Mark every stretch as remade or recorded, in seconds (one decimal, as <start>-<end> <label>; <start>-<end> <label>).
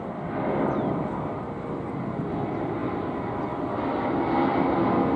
0.0-5.2 recorded